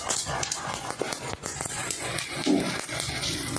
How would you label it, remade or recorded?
remade